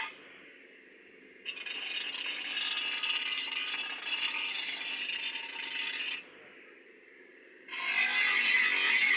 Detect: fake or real real